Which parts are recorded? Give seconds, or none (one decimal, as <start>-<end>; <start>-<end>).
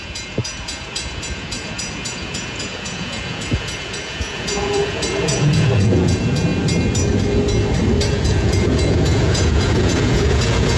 6.5-8.1